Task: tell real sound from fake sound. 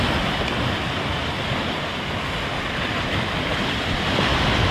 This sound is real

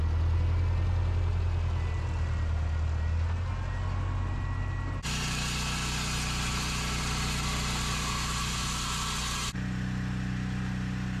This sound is real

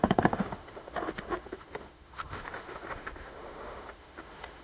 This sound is fake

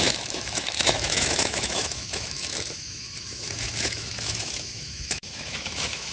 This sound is fake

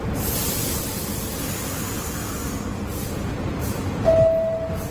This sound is real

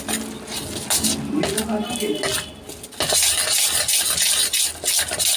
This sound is real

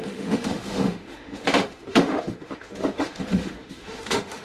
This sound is fake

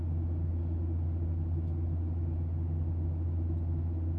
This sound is real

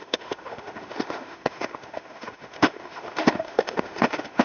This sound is fake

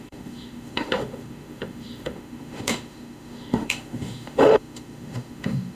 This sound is fake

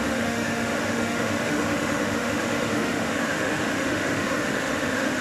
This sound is fake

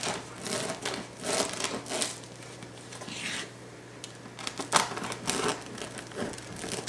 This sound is real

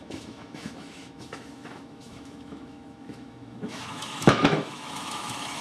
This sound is fake